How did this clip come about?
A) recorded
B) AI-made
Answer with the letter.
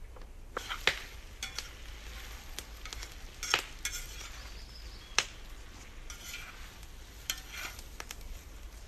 A